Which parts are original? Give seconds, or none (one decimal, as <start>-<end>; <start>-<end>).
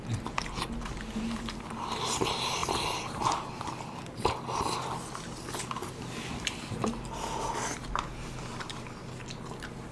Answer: 0.0-9.9